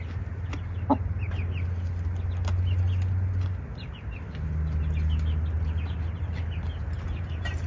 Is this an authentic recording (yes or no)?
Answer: yes